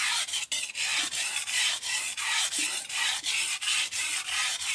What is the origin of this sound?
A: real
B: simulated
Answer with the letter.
A